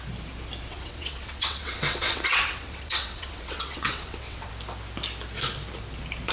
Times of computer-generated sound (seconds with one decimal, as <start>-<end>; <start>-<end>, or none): 0.7-4.5